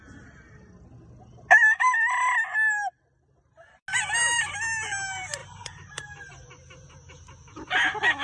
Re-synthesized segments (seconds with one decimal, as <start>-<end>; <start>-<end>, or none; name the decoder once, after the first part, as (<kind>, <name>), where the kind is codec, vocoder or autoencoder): 3.9-4.4 (vocoder, BigVGAN v2); 5.4-6.3